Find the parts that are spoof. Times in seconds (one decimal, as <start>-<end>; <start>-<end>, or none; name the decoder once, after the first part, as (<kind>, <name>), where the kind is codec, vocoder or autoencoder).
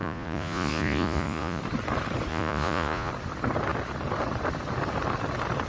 0.0-1.6 (vocoder, Vocos); 2.3-3.1